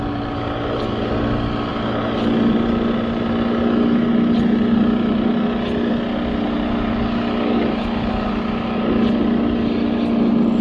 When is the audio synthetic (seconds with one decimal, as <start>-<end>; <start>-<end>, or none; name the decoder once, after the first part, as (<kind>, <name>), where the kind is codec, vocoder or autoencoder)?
none